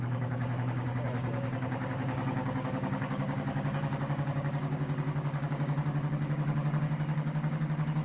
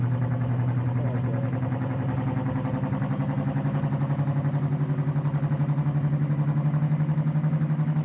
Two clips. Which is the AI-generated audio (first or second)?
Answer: first